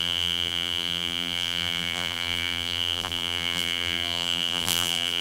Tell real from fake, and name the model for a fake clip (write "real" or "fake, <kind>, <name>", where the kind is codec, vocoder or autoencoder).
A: fake, vocoder, BigVGAN v2